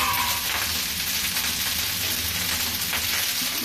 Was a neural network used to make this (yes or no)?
no